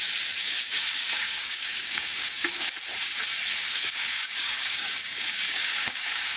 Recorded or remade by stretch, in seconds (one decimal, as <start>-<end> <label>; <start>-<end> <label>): 0.0-0.4 recorded; 0.4-2.7 remade; 2.7-3.6 recorded; 3.6-6.4 remade